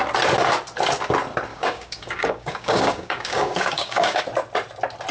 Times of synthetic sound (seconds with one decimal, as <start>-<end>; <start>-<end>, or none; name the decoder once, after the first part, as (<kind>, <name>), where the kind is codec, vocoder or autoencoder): 1.5-4.2 (codec, DAC)